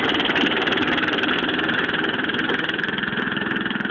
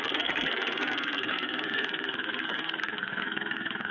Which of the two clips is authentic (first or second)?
first